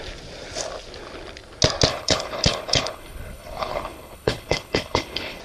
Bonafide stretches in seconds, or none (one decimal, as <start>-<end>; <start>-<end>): 0.0-1.9